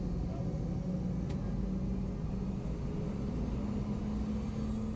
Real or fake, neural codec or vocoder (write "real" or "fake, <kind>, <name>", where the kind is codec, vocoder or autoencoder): real